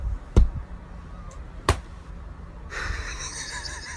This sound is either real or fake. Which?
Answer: real